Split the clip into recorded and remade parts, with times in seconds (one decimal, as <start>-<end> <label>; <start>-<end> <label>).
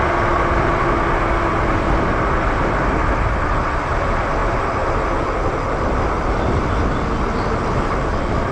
0.0-8.5 recorded